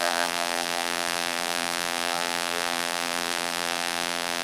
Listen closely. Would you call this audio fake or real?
fake